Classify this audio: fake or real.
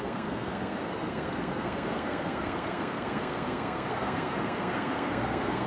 fake